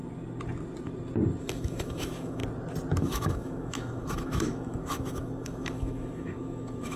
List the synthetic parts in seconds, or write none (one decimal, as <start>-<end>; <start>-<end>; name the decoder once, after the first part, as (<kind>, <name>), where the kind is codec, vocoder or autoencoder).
1.4-2.4 (autoencoder, DAC-VAE); 3.0-7.0